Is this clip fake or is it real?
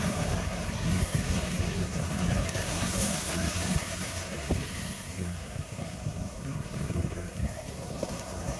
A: fake